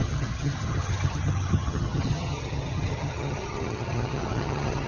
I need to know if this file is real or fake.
fake